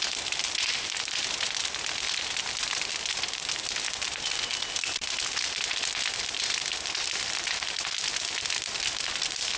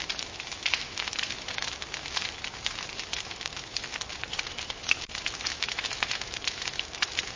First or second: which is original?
first